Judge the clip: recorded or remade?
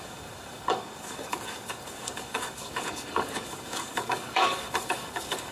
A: remade